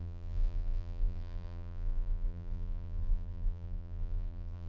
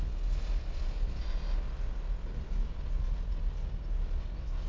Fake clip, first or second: first